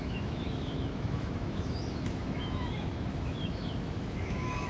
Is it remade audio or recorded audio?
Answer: remade